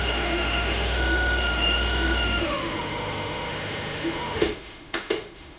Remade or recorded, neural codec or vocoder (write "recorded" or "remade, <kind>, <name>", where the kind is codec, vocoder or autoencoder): remade, autoencoder, DAC-VAE